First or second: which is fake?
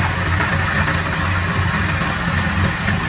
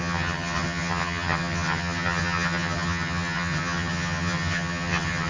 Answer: second